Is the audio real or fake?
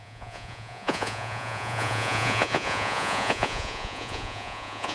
fake